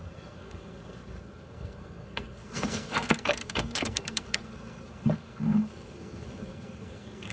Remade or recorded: remade